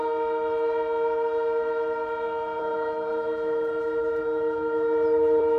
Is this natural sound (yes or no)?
yes